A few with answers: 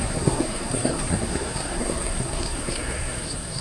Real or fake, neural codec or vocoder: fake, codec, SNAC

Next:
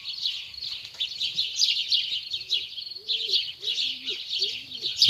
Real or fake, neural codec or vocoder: real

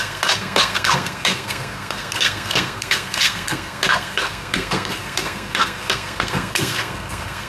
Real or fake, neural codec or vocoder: fake, codec, SNAC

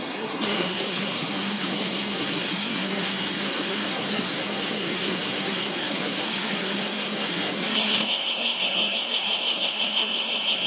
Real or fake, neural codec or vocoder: fake, codec, SNAC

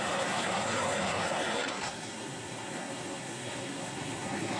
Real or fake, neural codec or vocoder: fake, codec, SNAC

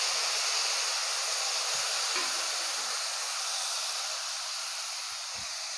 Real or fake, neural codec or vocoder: real